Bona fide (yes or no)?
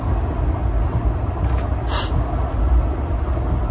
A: yes